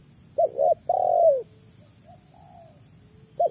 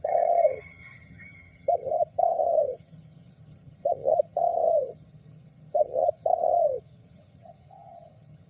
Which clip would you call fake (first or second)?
second